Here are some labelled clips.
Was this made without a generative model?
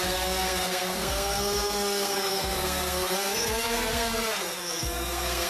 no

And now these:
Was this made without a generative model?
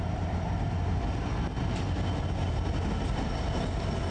yes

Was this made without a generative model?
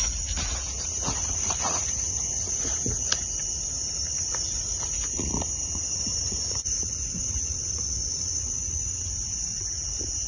no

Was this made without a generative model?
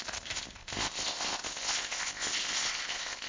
no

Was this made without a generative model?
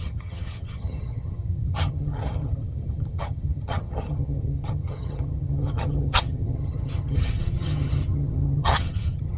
no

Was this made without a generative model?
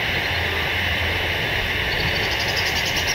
yes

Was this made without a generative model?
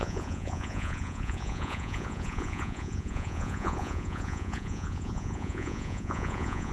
no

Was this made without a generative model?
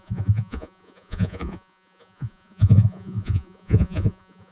no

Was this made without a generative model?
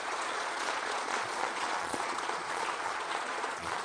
no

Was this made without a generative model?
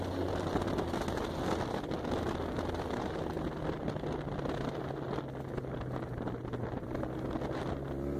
yes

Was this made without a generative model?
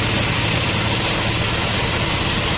yes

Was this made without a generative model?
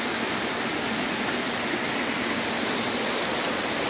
yes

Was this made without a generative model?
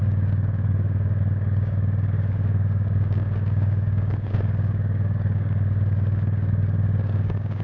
no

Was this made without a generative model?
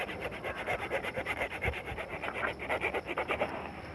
yes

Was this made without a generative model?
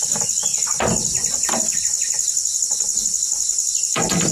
yes